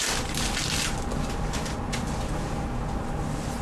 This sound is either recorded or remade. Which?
recorded